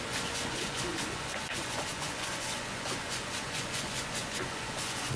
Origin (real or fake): fake